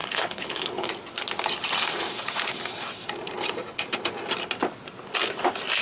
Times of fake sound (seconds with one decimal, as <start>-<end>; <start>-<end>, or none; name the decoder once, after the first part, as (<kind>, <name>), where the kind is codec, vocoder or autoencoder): 0.0-0.9 (codec, HILCodec)